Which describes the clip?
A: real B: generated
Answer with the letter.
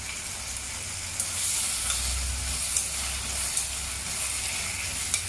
A